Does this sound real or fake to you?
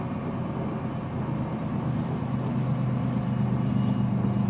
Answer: real